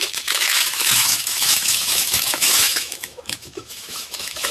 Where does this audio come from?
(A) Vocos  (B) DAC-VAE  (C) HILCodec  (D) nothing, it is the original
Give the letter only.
B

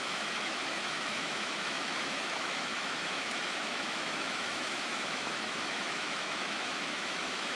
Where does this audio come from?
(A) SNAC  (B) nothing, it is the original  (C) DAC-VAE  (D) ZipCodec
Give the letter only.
C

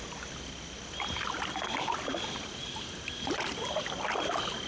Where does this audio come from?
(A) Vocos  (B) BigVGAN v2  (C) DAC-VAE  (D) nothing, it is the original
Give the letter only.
D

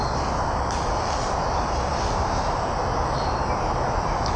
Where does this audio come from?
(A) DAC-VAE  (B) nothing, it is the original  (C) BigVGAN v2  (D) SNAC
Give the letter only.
B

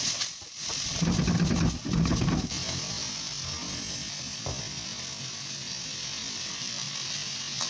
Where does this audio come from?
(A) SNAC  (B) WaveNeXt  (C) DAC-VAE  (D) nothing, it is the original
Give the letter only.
D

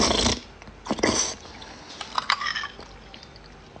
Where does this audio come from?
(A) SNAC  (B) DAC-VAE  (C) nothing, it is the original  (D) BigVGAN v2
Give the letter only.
C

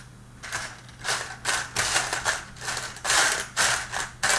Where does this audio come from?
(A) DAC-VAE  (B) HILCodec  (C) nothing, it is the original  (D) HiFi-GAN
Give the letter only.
C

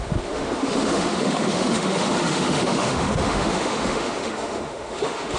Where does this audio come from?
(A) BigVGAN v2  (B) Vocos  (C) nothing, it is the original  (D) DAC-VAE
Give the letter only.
D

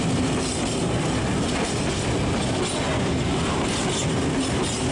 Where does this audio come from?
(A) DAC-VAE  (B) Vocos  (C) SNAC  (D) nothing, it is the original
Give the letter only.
D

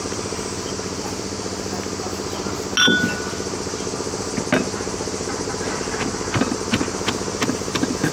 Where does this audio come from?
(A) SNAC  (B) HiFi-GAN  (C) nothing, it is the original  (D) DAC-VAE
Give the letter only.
C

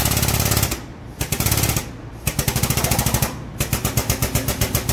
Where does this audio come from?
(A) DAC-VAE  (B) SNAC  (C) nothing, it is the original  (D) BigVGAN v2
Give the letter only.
C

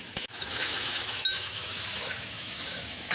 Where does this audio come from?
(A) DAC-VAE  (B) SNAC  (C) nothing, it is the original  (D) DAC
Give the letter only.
A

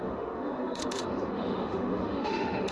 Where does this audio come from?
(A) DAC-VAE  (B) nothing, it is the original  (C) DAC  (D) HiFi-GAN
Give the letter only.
A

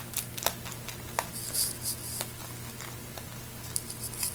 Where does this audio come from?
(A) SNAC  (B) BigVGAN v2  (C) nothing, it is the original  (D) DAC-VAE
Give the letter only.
C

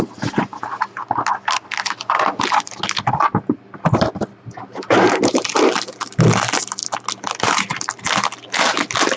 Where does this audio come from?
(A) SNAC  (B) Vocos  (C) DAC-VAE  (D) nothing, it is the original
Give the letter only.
D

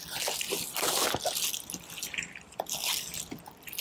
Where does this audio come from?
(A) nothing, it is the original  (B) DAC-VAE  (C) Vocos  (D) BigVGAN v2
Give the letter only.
A